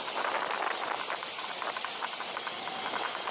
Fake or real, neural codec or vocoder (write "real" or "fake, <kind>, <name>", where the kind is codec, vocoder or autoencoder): real